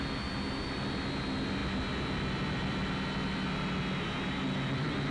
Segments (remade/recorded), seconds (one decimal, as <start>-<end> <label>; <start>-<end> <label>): 0.0-5.1 recorded